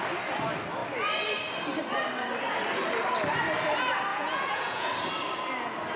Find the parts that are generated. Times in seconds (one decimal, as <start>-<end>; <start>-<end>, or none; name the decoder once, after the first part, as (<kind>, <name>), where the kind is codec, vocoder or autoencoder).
4.1-4.9 (vocoder, Vocos)